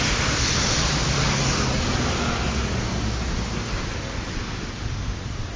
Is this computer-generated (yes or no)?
no